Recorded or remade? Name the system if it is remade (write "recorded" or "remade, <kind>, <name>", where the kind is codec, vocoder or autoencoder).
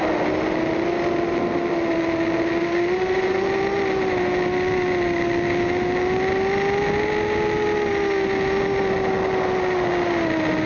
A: recorded